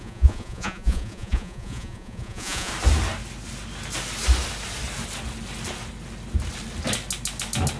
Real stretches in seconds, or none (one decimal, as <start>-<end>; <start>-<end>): 2.7-7.8